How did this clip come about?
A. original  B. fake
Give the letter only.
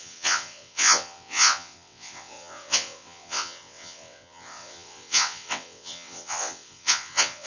B